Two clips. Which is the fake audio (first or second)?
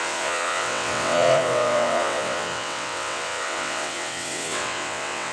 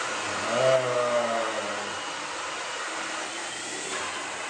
first